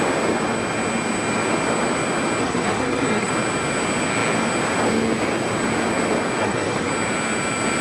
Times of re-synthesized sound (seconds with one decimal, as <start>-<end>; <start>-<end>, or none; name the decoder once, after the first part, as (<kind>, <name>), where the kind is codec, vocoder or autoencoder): 2.4-3.3 (codec, SNAC); 6.4-6.9

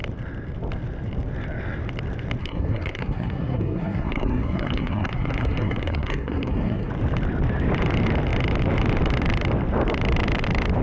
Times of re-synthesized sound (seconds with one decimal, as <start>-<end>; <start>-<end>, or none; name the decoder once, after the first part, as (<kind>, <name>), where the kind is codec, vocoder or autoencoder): 2.4-6.9 (codec, SNAC)

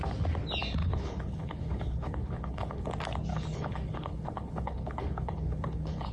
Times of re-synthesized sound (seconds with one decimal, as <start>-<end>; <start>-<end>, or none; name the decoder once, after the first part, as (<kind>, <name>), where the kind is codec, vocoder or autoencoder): 0.8-2.9 (codec, HILCodec); 3.3-6.1

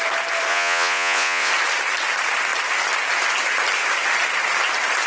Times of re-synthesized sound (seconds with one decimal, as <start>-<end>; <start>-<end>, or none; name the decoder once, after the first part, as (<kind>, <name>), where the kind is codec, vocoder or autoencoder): 0.5-1.5 (vocoder, Vocos)

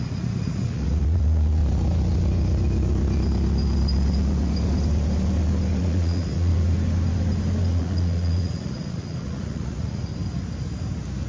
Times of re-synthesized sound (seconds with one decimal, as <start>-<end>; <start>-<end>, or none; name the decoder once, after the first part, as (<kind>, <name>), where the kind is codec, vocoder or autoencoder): 0.0-1.6 (vocoder, Vocos); 5.8-6.5; 7.7-10.1